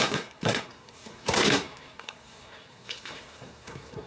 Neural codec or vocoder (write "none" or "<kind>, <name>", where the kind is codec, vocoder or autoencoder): codec, SNAC